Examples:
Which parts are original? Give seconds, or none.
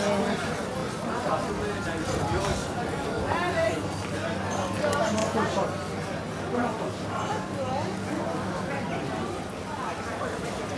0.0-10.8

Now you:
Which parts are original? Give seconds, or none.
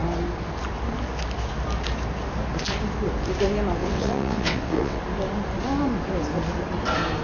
0.0-3.8; 5.0-7.2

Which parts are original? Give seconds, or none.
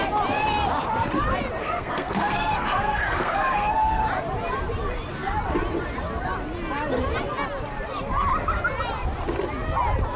0.0-1.6; 4.0-10.2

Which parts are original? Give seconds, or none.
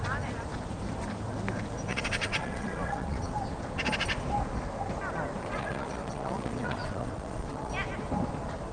0.0-1.9; 3.4-5.4; 7.7-8.7